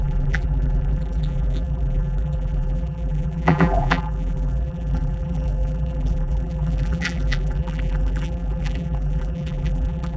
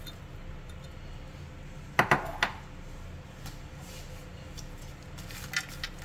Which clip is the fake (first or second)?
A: first